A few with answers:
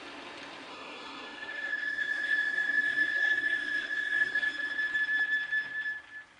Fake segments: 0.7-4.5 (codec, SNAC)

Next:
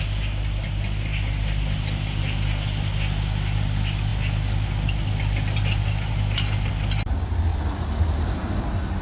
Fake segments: 1.1-2.2 (vocoder, BigVGAN v2)

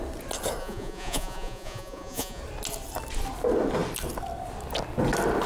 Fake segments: 0.6-2.4 (vocoder, Vocos)

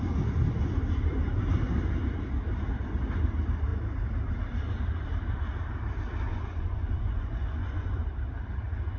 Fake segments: 6.3-7.9 (vocoder, Vocos)

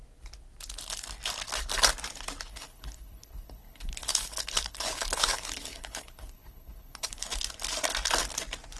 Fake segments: 2.5-7.4 (codec, HILCodec)